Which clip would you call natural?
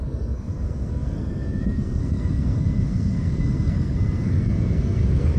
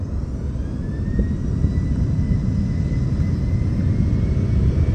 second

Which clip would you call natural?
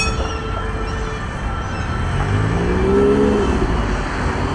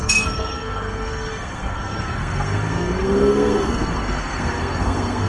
first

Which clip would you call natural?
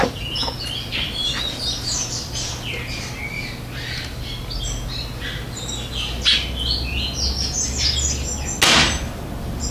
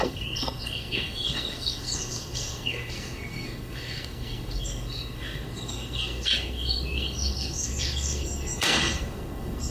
first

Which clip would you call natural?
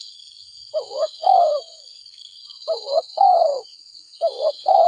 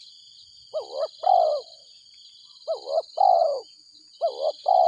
second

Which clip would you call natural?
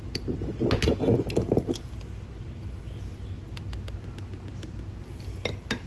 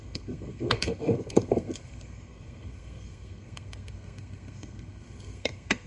first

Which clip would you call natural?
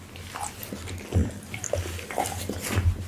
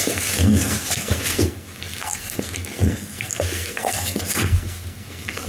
first